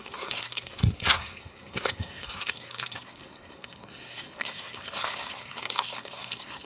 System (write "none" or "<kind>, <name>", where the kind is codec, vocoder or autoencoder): codec, SNAC